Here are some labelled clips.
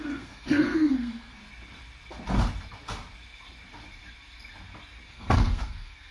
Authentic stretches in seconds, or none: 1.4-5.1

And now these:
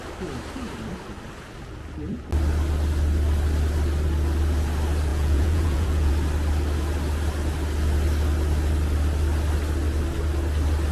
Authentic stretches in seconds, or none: 0.0-5.1; 6.1-10.9